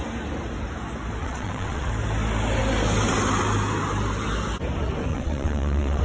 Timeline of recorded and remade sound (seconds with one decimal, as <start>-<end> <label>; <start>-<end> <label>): 0.0-1.2 recorded; 1.2-1.9 remade; 1.9-5.1 recorded; 5.1-6.0 remade